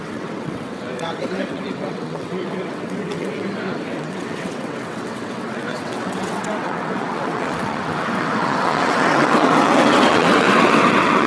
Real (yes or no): no